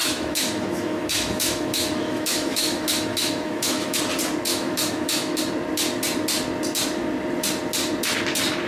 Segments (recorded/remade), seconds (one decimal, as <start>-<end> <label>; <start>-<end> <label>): 0.0-4.0 remade; 4.0-4.5 recorded; 4.5-5.4 remade; 5.4-8.7 recorded

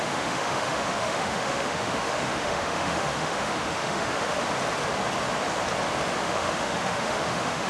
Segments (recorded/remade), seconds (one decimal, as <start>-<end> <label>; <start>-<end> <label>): 0.0-4.4 remade; 4.4-6.2 recorded; 6.2-7.7 remade

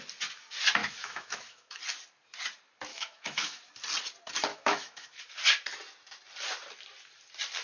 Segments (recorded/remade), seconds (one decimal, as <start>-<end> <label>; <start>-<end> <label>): 0.0-0.8 recorded; 0.8-1.8 remade; 1.8-2.9 recorded; 2.9-3.7 remade; 3.7-4.5 recorded; 4.5-5.2 remade; 5.2-7.6 recorded

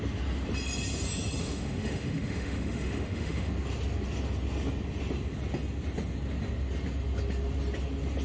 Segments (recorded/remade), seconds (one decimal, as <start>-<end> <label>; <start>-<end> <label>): 0.0-1.4 recorded; 1.4-3.5 remade; 3.5-8.2 recorded

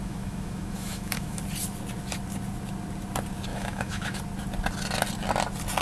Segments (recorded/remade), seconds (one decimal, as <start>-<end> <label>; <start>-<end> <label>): 0.0-1.4 remade; 1.4-3.5 recorded; 3.5-4.2 remade; 4.2-5.8 recorded

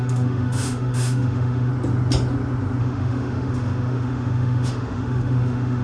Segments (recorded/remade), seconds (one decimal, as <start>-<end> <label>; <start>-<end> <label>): 0.0-1.7 remade; 1.7-2.8 recorded; 2.8-5.8 remade